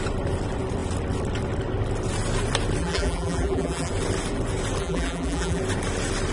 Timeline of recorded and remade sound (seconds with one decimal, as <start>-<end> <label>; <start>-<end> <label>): 0.0-2.8 recorded; 2.8-3.9 remade; 3.9-4.8 recorded; 4.8-5.6 remade; 5.6-6.3 recorded